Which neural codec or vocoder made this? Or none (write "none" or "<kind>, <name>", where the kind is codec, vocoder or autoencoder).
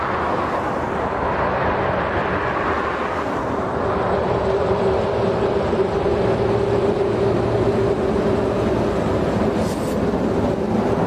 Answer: none